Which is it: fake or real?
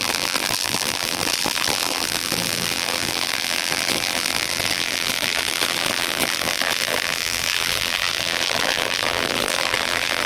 fake